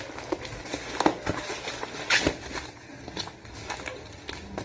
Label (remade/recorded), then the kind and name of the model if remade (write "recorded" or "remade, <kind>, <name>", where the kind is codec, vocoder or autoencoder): recorded